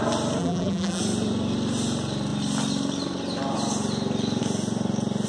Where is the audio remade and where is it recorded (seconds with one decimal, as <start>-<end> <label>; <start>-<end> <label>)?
0.0-0.4 recorded; 0.4-1.0 remade; 1.0-5.3 recorded